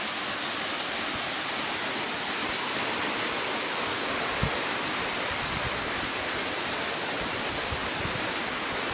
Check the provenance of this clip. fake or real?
real